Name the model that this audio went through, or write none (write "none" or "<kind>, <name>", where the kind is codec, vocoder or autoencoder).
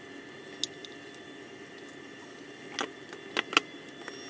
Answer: none